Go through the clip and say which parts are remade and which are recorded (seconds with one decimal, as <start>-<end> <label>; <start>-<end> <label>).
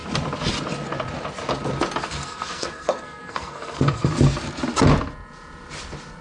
0.0-2.0 recorded; 2.0-4.1 remade; 4.1-6.2 recorded